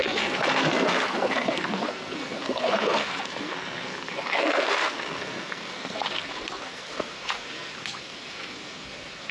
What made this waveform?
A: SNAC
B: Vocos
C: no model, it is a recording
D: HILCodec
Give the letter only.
A